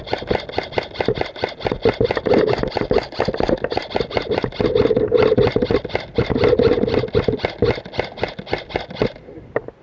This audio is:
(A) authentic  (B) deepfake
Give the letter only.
A